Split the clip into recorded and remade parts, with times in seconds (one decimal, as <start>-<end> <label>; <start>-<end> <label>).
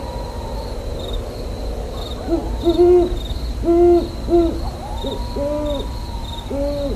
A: 0.0-7.0 recorded